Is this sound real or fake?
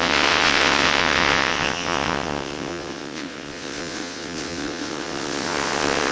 fake